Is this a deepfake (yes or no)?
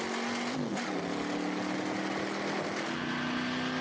no